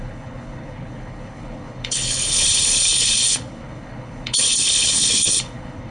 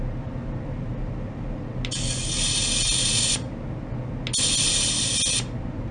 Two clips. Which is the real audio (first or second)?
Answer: second